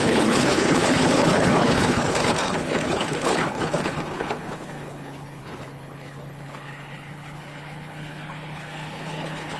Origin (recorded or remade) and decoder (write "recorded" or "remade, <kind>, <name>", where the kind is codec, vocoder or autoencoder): remade, codec, HILCodec